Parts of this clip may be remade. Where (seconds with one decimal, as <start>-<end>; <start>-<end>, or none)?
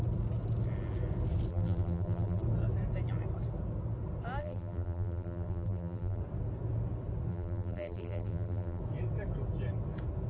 1.5-2.4; 4.4-6.2; 7.3-8.8